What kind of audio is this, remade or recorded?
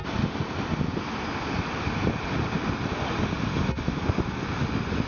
recorded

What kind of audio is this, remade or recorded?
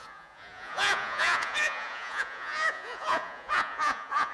remade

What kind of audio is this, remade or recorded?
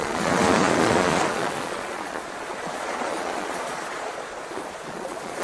remade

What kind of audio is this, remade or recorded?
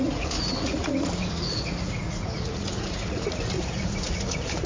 remade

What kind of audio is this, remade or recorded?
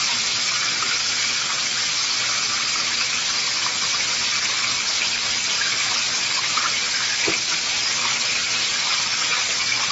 recorded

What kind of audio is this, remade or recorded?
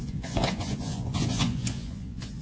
remade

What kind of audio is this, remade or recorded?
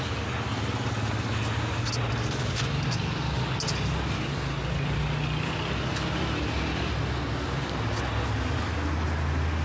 recorded